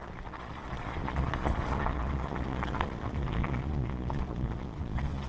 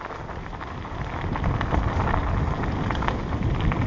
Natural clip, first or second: second